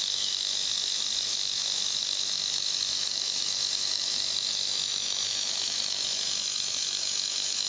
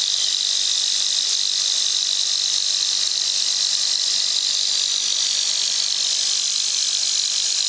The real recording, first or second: second